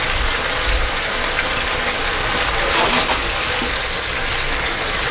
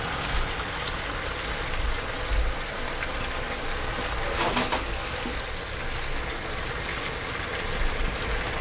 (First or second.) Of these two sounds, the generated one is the first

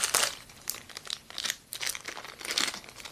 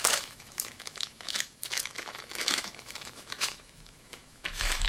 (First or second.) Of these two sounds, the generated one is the second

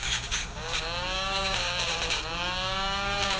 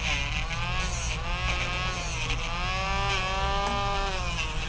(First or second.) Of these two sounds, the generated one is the first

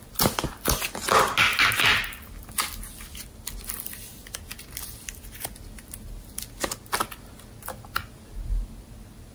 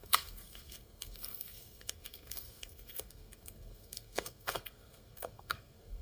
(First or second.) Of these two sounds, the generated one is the second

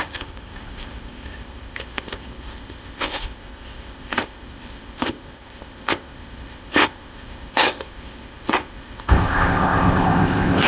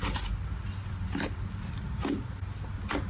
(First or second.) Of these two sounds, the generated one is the first